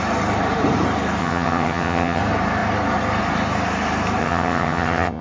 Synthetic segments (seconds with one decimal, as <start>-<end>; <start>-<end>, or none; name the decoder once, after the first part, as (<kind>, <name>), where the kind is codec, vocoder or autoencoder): 1.2-2.2 (vocoder, HiFi-GAN); 4.2-5.2